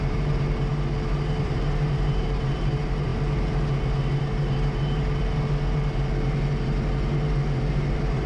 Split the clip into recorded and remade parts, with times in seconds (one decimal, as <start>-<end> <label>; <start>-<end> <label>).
0.0-0.7 remade; 0.7-1.4 recorded; 1.4-3.1 remade; 3.1-7.7 recorded; 7.7-8.3 remade